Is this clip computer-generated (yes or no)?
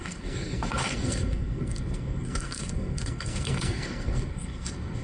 yes